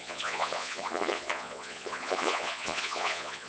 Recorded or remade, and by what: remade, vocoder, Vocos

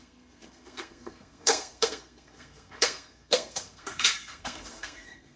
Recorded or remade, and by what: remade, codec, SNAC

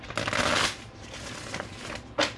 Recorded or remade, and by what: recorded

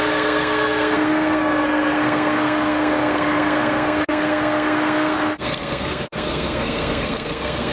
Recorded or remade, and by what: remade, codec, SNAC